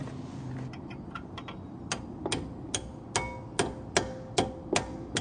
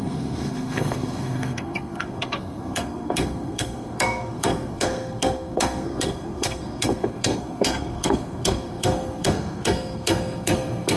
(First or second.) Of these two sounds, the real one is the first